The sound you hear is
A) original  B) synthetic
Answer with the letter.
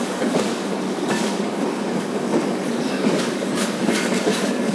B